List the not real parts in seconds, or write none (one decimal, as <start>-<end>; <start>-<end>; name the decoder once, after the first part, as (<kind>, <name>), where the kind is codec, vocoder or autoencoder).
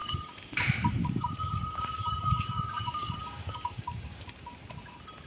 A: 0.0-0.5 (codec, DAC); 1.0-4.2